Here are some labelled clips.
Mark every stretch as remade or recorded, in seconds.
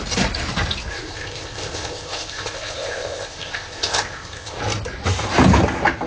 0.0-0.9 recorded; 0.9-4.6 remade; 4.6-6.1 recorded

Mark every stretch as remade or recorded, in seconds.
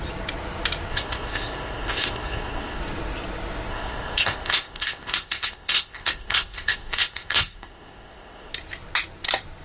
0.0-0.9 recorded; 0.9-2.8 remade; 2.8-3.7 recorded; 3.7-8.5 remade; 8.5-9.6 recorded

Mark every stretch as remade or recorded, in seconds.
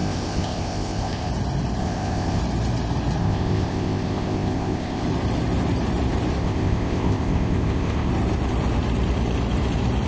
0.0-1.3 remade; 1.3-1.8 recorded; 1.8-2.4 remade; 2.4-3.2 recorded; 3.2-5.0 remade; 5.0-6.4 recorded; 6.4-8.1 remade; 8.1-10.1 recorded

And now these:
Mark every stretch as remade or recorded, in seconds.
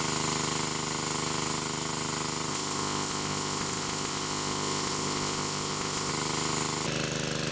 0.0-2.5 recorded; 2.5-6.1 remade; 6.1-7.5 recorded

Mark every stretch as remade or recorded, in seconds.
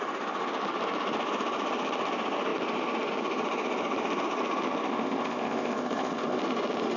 0.0-4.9 recorded; 4.9-6.4 remade; 6.4-7.0 recorded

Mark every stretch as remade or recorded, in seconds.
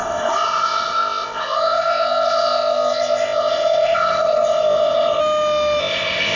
0.0-5.2 remade; 5.2-5.8 recorded; 5.8-6.4 remade